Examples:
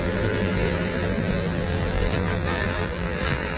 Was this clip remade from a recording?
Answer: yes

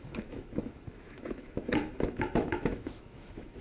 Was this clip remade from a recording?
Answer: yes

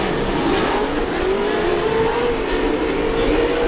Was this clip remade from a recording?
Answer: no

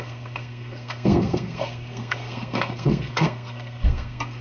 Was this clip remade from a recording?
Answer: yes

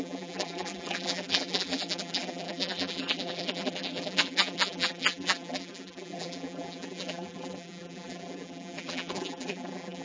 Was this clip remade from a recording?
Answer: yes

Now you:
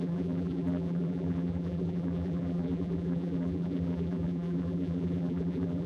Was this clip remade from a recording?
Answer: yes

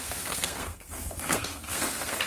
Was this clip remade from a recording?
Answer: yes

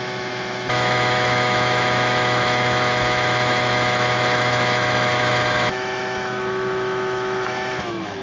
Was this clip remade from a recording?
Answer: yes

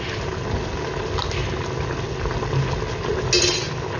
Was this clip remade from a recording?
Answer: no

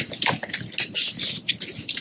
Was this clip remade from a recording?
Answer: no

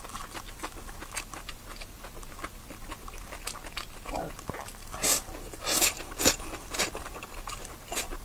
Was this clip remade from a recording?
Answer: no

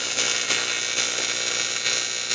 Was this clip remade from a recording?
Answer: no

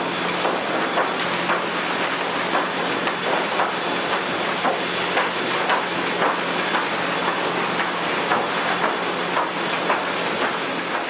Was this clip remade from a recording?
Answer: no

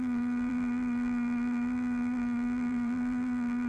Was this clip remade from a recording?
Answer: yes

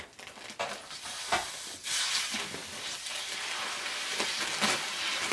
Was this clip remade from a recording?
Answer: no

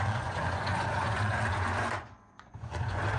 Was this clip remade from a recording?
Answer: yes